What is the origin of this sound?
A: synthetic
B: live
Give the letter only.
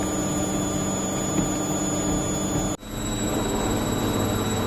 B